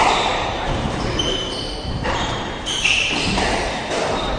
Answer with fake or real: fake